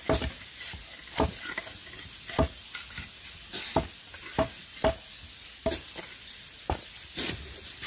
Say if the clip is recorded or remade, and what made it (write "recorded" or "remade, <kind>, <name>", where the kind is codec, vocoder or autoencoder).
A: recorded